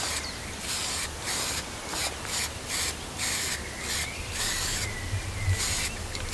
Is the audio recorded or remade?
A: recorded